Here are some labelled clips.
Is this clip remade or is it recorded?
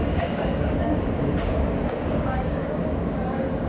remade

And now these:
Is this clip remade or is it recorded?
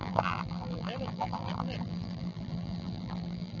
remade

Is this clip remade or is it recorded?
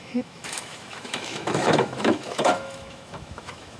remade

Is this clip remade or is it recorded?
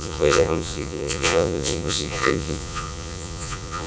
remade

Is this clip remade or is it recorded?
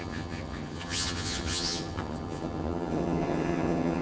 remade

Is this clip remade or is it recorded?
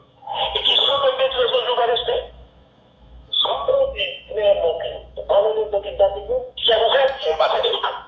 remade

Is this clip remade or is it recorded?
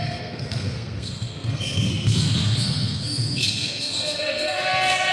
remade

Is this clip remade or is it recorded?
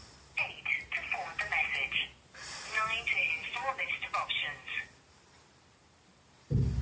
recorded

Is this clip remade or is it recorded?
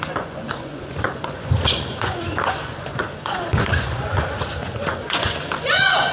remade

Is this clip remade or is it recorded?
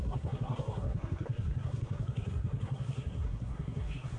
remade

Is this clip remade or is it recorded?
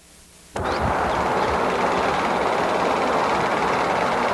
recorded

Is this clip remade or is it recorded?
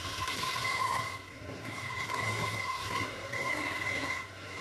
remade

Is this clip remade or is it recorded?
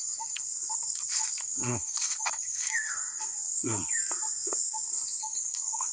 remade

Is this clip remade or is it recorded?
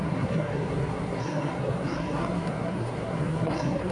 remade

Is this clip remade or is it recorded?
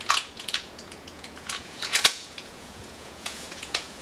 remade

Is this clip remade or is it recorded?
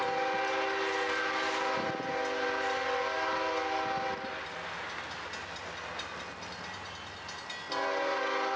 recorded